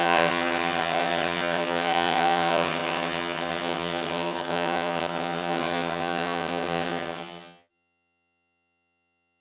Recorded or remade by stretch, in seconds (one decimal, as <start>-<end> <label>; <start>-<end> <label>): 0.0-9.4 remade